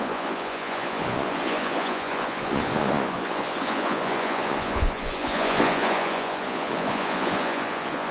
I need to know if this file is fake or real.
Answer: fake